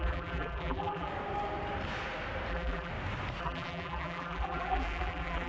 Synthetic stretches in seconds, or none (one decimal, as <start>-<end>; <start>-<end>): 0.0-1.1; 2.5-2.9; 3.4-5.5